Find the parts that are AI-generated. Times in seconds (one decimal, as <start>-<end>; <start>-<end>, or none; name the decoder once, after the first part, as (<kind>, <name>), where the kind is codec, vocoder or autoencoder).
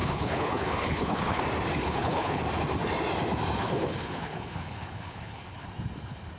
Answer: 0.0-1.4 (codec, HILCodec); 1.8-2.4; 3.6-5.7